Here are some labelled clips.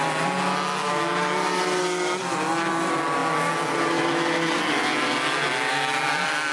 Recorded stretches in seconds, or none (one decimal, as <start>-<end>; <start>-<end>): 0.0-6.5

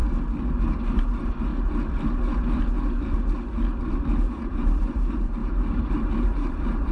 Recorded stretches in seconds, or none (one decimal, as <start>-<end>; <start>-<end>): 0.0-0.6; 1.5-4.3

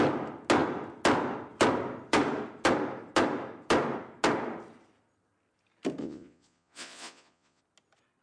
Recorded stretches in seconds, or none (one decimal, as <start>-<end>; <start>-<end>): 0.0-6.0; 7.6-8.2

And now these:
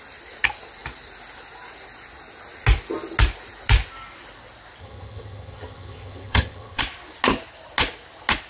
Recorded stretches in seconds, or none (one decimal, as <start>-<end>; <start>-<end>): 0.0-4.8; 6.8-8.5

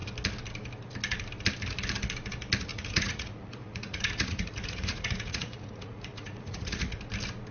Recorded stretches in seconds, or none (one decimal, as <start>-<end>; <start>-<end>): 0.0-2.7; 7.0-7.5

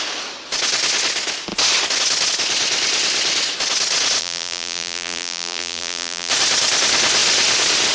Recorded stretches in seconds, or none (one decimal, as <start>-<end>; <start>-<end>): 0.0-4.2; 6.3-7.9

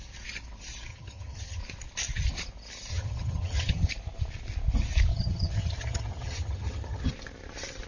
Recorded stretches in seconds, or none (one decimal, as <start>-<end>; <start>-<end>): 0.0-0.9; 1.6-2.9; 3.9-5.1; 7.1-7.9